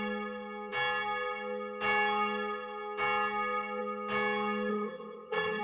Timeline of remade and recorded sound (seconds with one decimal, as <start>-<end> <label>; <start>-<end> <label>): 0.0-4.7 recorded; 4.7-5.6 remade